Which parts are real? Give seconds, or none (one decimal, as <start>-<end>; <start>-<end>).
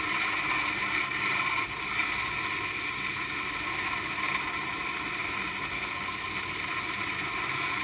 0.0-7.8